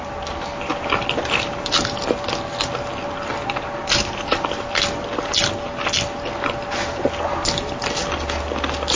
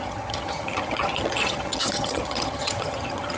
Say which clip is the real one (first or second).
first